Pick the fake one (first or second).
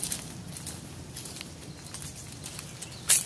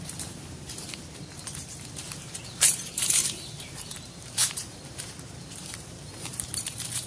second